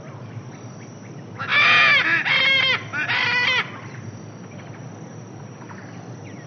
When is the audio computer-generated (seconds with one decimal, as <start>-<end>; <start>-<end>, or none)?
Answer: none